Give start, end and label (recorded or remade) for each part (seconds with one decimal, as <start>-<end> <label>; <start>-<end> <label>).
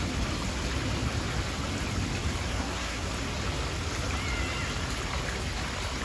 0.0-2.5 recorded; 2.5-3.1 remade; 3.1-6.0 recorded